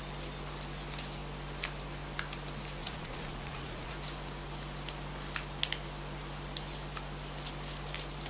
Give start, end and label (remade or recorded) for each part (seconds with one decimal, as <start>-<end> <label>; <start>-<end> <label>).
0.0-2.8 recorded; 2.8-3.9 remade; 3.9-8.3 recorded